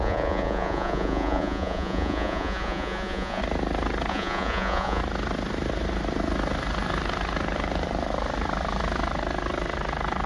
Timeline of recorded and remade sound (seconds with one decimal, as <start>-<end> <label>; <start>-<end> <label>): 0.0-3.4 remade; 3.4-4.1 recorded; 4.1-5.0 remade; 5.0-10.3 recorded